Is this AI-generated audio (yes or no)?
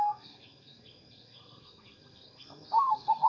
yes